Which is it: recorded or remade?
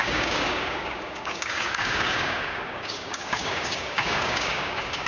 remade